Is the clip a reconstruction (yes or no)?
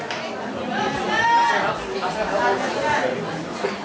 no